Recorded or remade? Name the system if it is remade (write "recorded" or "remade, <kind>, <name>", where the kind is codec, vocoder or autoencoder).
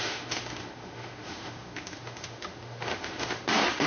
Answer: remade, autoencoder, DAC-VAE